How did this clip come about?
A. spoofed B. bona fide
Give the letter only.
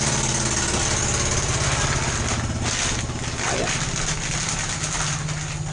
B